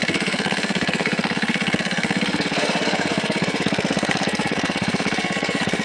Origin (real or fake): fake